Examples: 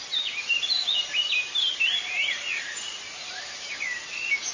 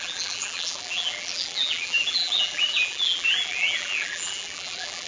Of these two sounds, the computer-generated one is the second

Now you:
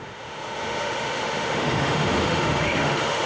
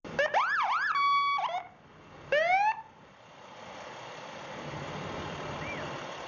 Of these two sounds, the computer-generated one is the first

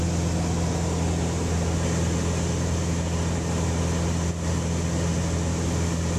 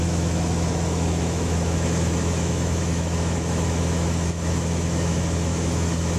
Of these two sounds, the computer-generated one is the second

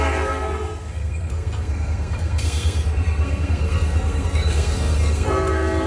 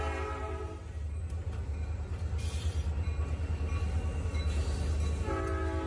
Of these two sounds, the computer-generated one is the first